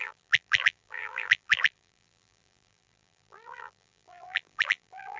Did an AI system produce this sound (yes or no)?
yes